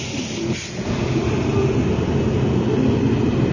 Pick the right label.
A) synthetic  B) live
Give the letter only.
B